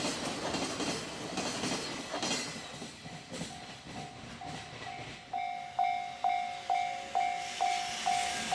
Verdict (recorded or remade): recorded